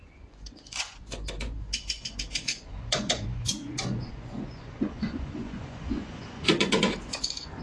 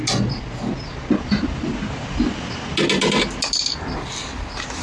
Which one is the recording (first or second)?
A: second